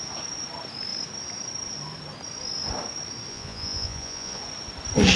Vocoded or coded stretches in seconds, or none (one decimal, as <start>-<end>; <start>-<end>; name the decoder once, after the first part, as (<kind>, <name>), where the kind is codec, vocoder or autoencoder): 3.3-4.4 (vocoder, Vocos)